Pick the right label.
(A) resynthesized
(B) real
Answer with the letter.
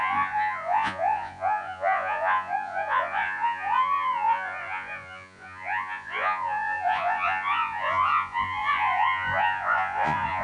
A